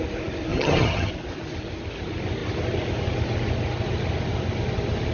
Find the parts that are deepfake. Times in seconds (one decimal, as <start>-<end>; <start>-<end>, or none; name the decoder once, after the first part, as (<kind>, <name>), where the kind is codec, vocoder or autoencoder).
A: 0.5-1.1 (vocoder, HiFi-GAN)